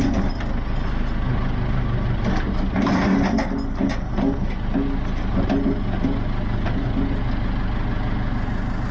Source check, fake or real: real